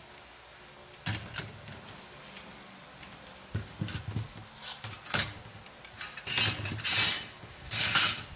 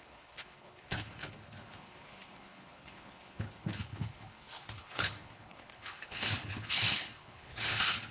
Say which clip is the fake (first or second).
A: second